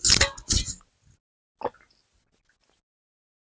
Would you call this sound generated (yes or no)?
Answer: no